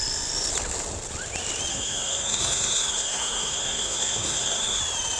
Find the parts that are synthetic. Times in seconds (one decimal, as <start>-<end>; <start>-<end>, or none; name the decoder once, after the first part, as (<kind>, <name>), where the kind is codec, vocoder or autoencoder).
1.7-4.8 (codec, SNAC)

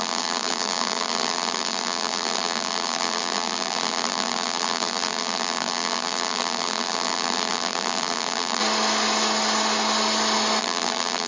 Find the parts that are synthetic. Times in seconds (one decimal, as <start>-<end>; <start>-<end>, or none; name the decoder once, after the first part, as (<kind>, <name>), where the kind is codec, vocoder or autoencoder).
0.0-8.6 (vocoder, BigVGAN v2); 10.6-11.3

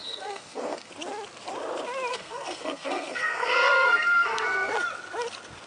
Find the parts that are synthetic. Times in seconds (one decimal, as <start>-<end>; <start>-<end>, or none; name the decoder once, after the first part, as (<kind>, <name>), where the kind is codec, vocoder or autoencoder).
0.0-0.9 (codec, SNAC); 2.1-4.7

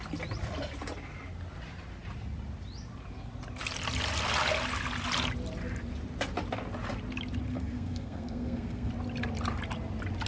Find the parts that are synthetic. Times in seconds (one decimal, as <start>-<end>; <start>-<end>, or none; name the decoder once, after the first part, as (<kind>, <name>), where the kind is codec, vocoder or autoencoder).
7.5-8.9 (codec, SNAC)

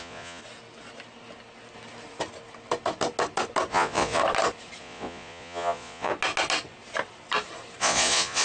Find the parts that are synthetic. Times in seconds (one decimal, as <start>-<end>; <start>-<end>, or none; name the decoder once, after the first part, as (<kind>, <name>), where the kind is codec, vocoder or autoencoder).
0.0-0.4 (vocoder, Vocos); 3.7-4.2; 4.8-6.1; 7.8-8.4